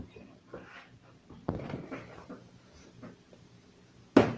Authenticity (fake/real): fake